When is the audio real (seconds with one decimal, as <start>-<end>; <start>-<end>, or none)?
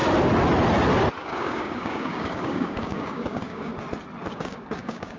0.0-1.2; 3.7-4.3